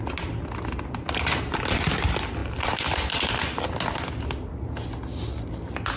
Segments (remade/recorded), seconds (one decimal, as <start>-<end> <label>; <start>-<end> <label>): 0.0-6.0 recorded